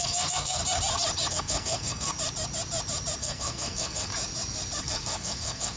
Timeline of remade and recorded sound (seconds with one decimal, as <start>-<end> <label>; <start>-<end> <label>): 0.0-0.6 remade; 0.6-1.3 recorded; 1.3-2.1 remade; 2.1-3.2 recorded; 3.2-4.1 remade; 4.1-4.8 recorded; 4.8-5.8 remade